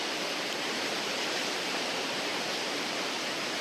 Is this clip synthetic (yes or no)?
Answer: yes